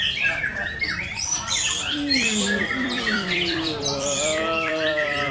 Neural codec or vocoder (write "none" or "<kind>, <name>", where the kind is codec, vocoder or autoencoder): vocoder, BigVGAN v2